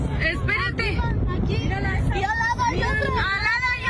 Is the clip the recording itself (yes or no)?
yes